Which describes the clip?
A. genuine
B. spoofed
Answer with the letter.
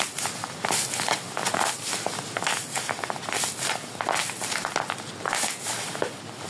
A